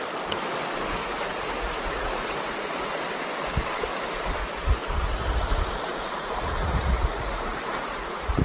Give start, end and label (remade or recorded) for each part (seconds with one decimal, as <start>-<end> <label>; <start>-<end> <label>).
0.0-1.0 recorded; 1.0-2.9 remade; 2.9-4.4 recorded; 4.4-5.2 remade; 5.2-5.9 recorded; 5.9-8.4 remade